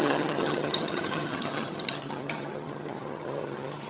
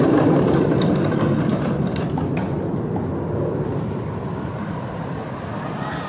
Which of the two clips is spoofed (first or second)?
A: first